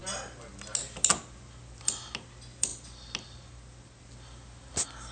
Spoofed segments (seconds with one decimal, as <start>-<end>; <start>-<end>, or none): none